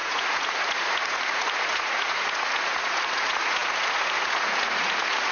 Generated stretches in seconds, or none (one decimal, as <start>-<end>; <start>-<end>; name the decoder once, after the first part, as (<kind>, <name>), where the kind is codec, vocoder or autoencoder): 0.0-5.3 (vocoder, Vocos)